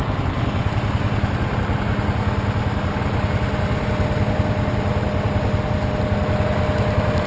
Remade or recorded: recorded